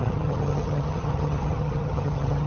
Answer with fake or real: fake